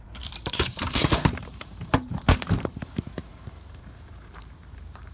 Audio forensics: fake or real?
fake